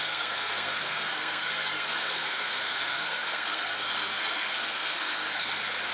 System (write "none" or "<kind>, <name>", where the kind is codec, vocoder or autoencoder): codec, SNAC